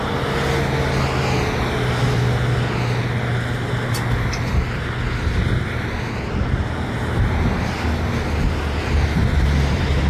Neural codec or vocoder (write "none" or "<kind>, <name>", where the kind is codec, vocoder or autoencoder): none